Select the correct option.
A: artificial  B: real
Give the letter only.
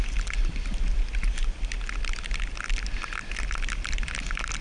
B